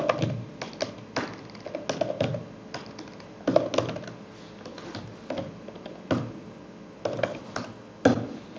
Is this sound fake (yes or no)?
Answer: no